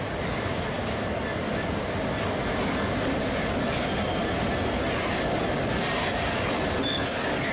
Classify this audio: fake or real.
real